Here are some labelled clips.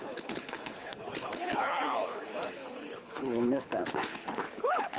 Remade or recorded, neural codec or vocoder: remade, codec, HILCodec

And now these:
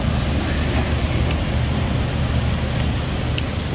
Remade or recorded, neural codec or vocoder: recorded